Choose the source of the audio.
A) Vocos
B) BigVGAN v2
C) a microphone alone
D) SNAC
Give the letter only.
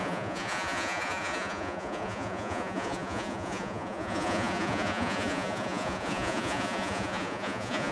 A